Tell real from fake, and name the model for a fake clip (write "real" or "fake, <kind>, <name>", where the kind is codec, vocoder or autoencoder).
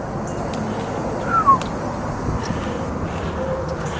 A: real